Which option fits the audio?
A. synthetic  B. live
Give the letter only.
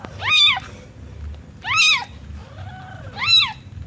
B